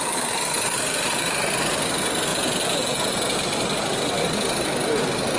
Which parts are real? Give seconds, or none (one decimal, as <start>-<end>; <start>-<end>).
0.0-2.3; 3.4-5.4